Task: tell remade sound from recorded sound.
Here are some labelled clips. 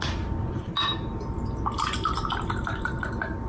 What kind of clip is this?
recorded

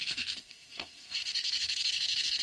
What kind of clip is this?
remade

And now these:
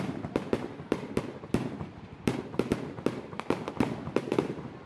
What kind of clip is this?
remade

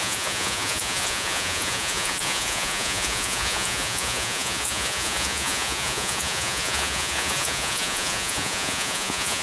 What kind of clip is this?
remade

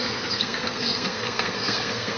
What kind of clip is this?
remade